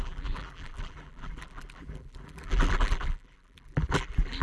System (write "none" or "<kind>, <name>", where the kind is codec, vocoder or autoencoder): vocoder, BigVGAN v2